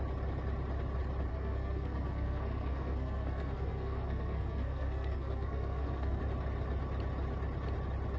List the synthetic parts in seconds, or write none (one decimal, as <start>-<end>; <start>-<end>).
1.3-6.2